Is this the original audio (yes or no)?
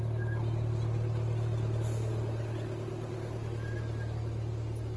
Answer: yes